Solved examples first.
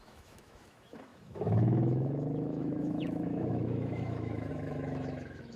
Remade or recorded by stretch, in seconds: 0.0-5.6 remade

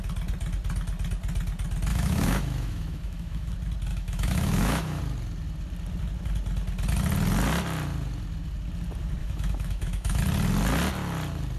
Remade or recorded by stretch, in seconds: 0.0-1.9 recorded; 1.9-3.5 remade; 3.5-3.9 recorded; 3.9-5.0 remade; 5.0-9.2 recorded; 9.2-10.2 remade; 10.2-11.6 recorded

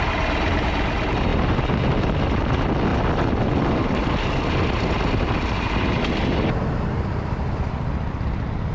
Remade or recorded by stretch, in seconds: 0.0-8.7 recorded

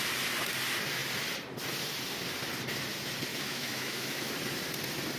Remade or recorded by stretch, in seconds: 0.0-3.3 recorded; 3.3-4.3 remade; 4.3-5.2 recorded